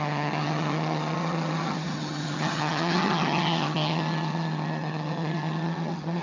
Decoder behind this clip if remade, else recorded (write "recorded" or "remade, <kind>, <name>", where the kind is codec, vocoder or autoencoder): remade, vocoder, HiFi-GAN